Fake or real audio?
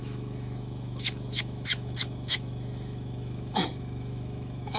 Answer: fake